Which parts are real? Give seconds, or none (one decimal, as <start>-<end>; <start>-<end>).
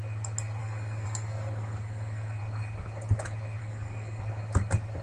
0.0-0.6; 2.4-3.6; 4.2-5.0